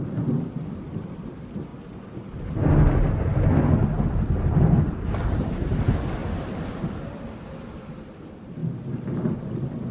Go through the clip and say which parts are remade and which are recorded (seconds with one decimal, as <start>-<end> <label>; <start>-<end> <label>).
0.0-6.2 recorded; 6.2-6.7 remade; 6.7-9.9 recorded